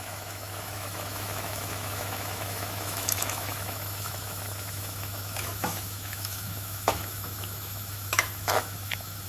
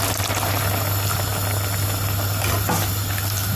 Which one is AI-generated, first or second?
first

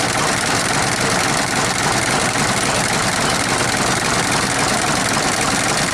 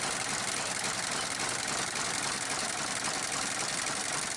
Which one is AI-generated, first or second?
first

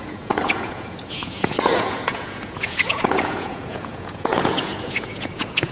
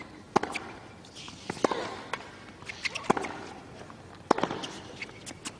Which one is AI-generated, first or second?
first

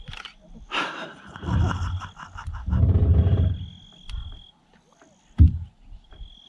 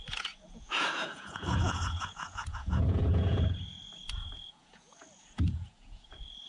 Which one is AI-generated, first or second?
second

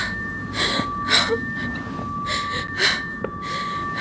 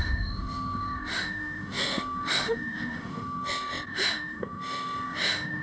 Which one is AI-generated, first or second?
second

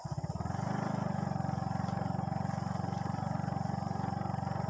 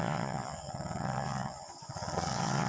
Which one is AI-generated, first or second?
second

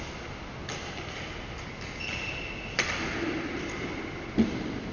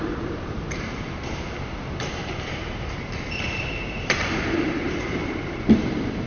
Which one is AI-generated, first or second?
second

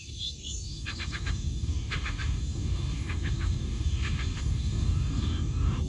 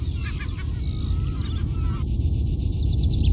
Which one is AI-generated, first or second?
first